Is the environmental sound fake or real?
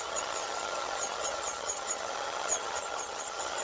fake